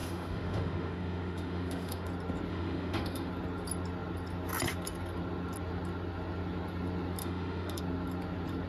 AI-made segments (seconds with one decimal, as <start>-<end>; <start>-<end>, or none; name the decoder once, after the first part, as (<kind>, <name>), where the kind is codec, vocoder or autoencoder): 0.0-2.1 (autoencoder, DAC-VAE); 2.5-3.3; 7.2-7.8